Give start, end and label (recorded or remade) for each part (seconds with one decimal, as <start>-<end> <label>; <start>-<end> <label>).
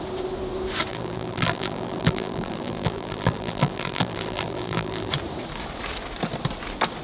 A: 0.0-0.9 recorded; 0.9-5.1 remade; 5.1-7.0 recorded